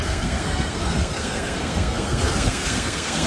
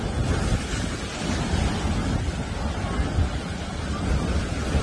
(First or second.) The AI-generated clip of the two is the first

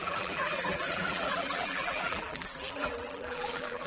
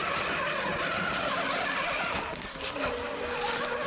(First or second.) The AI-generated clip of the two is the first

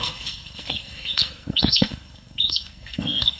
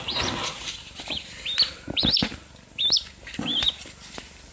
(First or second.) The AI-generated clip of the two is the first